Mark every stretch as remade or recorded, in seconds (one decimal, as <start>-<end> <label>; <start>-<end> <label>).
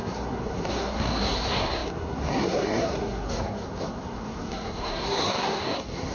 0.0-6.1 remade